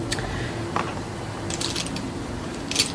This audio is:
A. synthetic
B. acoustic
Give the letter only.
B